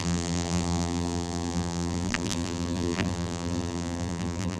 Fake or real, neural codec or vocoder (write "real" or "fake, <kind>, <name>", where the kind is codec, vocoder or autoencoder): fake, vocoder, BigVGAN v2